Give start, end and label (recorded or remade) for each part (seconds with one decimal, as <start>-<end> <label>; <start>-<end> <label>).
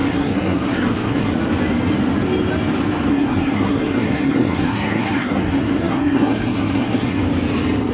0.0-1.3 remade; 1.3-3.1 recorded; 3.1-7.2 remade; 7.2-7.9 recorded